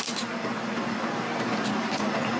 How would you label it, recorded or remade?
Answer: recorded